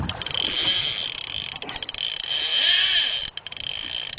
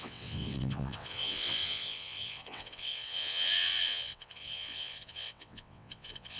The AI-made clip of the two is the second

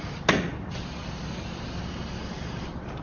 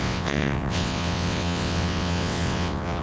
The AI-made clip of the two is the second